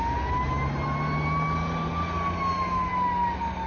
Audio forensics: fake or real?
real